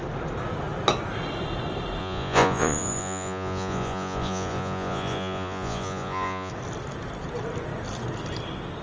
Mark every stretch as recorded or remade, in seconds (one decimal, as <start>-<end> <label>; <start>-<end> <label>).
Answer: 0.0-2.0 recorded; 2.0-6.5 remade; 6.5-8.8 recorded